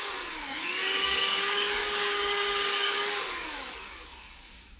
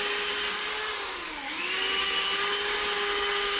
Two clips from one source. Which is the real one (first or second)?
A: second